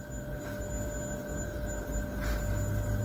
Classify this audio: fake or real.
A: real